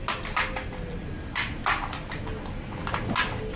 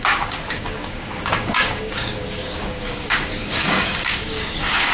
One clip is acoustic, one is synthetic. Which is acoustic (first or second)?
first